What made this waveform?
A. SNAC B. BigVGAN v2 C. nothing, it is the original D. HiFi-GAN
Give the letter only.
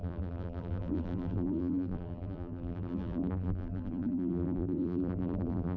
B